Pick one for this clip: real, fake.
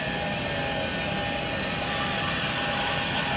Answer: real